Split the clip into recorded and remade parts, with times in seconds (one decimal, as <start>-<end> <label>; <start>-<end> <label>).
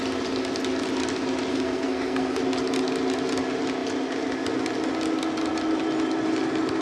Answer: 0.0-1.5 recorded; 1.5-2.4 remade; 2.4-6.8 recorded